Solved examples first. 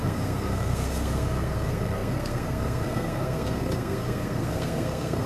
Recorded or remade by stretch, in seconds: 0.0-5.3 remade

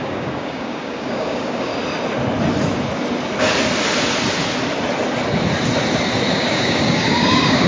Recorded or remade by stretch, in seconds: 0.0-1.7 remade; 1.7-6.3 recorded; 6.3-7.7 remade

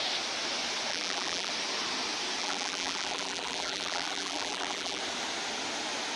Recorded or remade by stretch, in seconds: 0.0-0.9 recorded; 0.9-1.5 remade; 1.5-2.4 recorded; 2.4-5.0 remade; 5.0-6.2 recorded

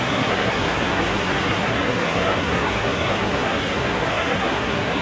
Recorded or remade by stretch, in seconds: 0.0-5.0 remade

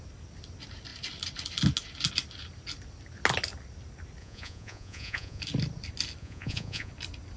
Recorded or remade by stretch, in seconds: 0.0-4.2 recorded; 4.2-5.4 remade; 5.4-6.2 recorded; 6.2-6.9 remade; 6.9-7.4 recorded

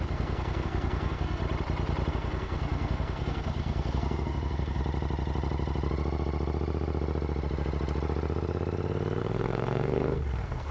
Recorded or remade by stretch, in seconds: 0.0-1.4 remade; 1.4-2.1 recorded; 2.1-4.8 remade; 4.8-9.2 recorded; 9.2-10.7 remade

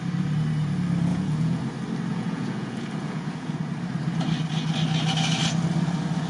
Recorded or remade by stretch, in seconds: 0.0-1.1 recorded; 1.1-1.6 remade; 1.6-2.1 recorded; 2.1-3.6 remade; 3.6-6.3 recorded